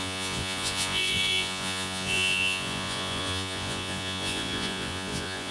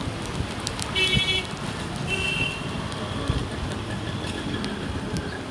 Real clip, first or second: second